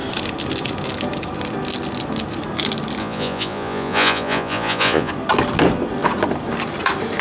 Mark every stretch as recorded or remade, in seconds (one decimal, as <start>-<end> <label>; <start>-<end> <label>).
0.0-3.0 recorded; 3.0-5.1 remade; 5.1-7.2 recorded